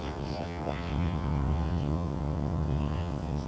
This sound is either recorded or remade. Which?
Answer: remade